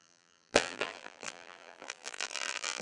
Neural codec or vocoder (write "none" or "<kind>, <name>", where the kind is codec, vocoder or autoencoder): vocoder, BigVGAN v2